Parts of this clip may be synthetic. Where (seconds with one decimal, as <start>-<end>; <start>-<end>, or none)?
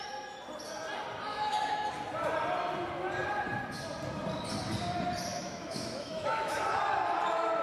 1.3-1.9; 5.3-6.6